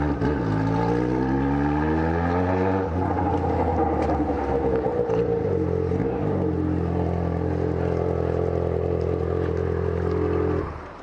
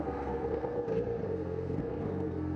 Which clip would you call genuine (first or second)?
first